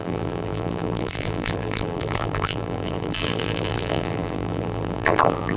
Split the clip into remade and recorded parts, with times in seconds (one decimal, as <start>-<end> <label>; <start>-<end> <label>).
0.0-5.6 remade